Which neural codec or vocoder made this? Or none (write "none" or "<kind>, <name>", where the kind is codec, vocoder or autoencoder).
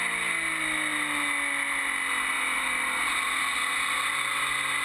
none